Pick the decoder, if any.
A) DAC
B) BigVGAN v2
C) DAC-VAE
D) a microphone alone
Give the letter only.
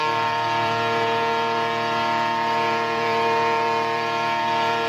B